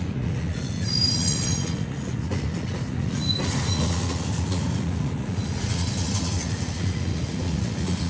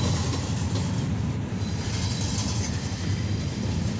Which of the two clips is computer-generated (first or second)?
first